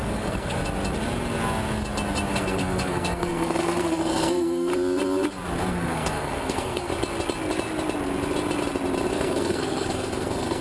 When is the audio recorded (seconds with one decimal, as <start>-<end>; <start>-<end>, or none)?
0.6-2.3; 4.7-5.7; 6.9-9.1